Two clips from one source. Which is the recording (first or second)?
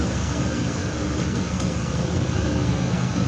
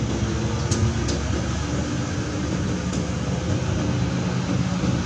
second